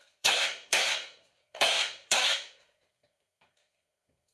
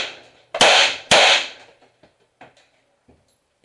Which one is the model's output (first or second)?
first